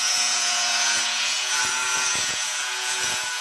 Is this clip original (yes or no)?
no